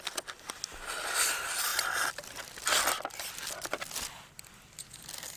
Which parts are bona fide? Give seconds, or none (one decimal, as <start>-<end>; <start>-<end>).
0.0-5.4